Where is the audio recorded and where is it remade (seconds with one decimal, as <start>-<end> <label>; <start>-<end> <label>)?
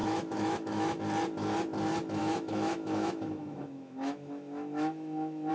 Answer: 0.0-1.0 remade; 1.0-2.2 recorded; 2.2-5.5 remade